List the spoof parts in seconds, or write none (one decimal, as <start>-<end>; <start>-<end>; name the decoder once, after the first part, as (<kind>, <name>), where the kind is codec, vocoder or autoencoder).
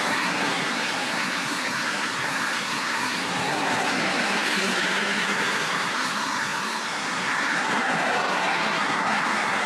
0.0-9.7 (codec, SNAC)